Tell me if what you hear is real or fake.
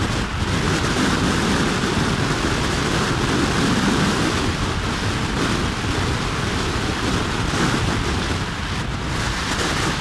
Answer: real